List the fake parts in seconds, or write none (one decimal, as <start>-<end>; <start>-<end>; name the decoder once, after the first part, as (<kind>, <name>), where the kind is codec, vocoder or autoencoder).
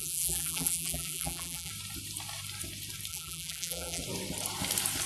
0.0-1.7 (vocoder, BigVGAN v2); 3.1-4.0